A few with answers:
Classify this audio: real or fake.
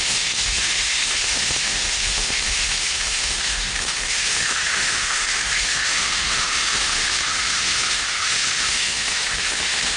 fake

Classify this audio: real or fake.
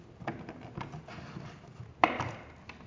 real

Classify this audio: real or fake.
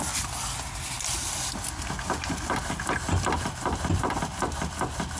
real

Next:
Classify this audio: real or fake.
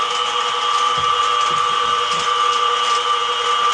real